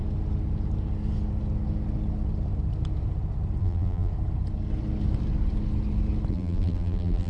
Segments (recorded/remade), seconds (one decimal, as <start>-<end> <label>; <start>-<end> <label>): 0.0-3.6 recorded; 3.6-4.1 remade; 4.1-6.3 recorded; 6.3-7.3 remade

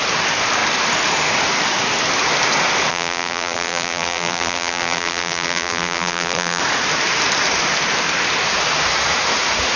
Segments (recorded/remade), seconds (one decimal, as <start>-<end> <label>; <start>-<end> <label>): 0.0-2.9 recorded; 2.9-6.6 remade; 6.6-9.8 recorded

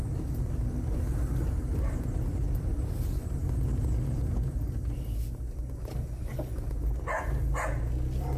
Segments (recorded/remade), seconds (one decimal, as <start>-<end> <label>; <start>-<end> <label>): 0.0-8.4 recorded

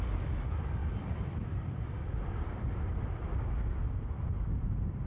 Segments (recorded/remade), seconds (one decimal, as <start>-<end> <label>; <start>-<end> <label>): 0.0-0.8 recorded; 0.8-3.9 remade; 3.9-5.1 recorded

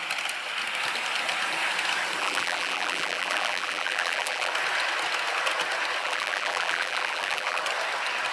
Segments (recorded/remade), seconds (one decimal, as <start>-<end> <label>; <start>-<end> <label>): 0.0-2.2 recorded; 2.2-4.5 remade; 4.5-6.0 recorded; 6.0-7.6 remade; 7.6-8.3 recorded

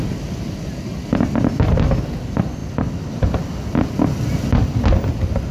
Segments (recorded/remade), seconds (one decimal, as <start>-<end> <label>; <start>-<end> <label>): 0.0-5.5 recorded